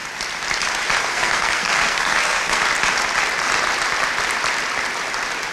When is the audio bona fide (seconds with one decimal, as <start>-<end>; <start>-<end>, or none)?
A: 0.0-1.0; 2.6-5.5